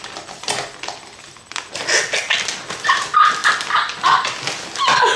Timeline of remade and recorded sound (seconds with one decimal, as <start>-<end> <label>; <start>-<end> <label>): 0.0-5.2 recorded